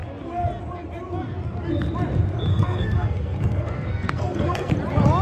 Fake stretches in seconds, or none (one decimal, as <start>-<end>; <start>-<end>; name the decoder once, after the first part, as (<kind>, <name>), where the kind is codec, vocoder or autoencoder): 2.5-4.7 (codec, SNAC)

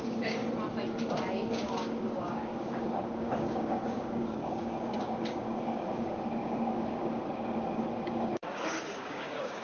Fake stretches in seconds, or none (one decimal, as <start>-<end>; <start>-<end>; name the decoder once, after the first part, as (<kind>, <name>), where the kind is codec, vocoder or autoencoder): 0.0-0.4 (codec, DAC); 1.5-9.6

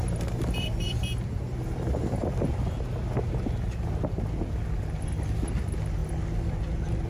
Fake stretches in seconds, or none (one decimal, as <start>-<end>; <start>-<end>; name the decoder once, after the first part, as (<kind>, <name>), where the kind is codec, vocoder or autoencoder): none

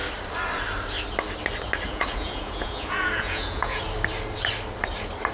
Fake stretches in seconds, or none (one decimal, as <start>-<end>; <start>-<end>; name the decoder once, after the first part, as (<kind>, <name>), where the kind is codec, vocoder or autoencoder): 1.9-3.8 (vocoder, Vocos)